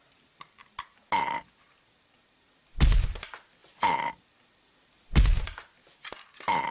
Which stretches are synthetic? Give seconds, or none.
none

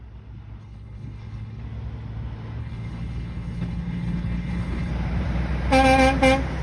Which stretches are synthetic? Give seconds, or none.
0.6-1.6 (codec, HILCodec); 2.6-4.9